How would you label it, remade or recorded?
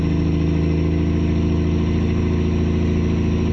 recorded